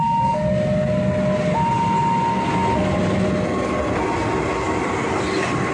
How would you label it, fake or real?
real